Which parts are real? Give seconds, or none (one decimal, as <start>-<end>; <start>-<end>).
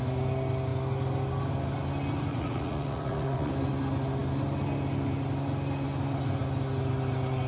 0.0-2.3; 3.5-7.5